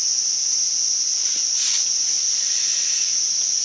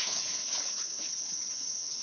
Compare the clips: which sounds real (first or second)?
first